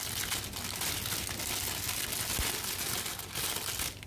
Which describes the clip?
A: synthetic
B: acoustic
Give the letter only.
B